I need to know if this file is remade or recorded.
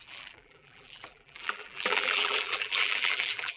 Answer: remade